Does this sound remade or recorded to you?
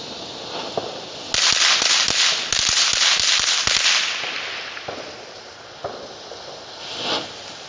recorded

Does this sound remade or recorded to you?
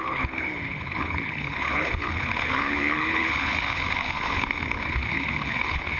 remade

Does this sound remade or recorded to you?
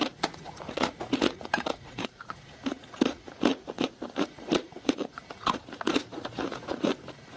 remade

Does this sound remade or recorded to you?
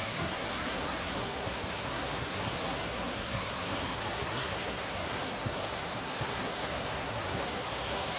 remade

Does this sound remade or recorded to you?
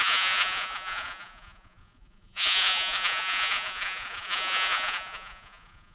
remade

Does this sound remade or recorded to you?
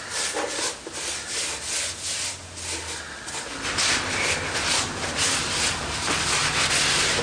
recorded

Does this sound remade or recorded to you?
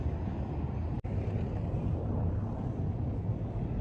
recorded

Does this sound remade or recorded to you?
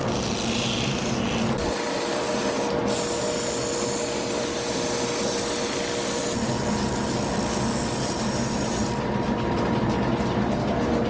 recorded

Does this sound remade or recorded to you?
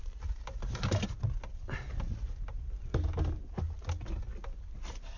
recorded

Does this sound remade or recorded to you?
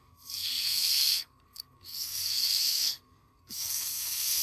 remade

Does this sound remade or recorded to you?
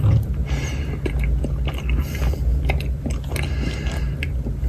recorded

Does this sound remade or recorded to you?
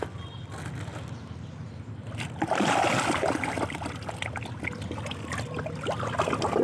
recorded